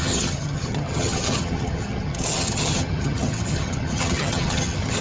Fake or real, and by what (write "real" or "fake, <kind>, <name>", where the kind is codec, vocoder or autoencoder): fake, vocoder, HiFi-GAN